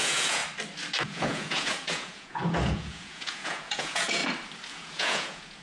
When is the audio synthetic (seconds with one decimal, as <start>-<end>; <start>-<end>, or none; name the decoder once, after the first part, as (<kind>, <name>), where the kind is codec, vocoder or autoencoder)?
0.0-0.4 (vocoder, Vocos); 1.0-4.2; 4.7-5.6